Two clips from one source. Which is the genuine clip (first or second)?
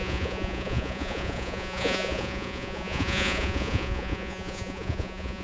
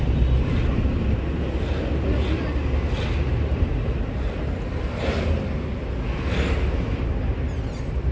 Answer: second